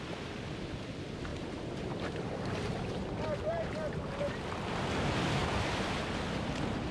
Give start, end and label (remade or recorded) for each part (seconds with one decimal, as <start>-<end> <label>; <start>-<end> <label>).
0.0-1.3 recorded; 1.3-4.4 remade; 4.4-6.9 recorded